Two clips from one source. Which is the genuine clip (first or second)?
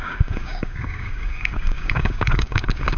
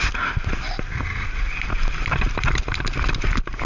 second